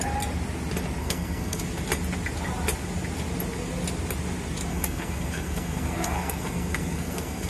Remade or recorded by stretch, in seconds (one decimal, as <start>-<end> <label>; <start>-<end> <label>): 0.0-1.0 recorded; 1.0-1.6 remade; 1.6-4.7 recorded; 4.7-7.5 remade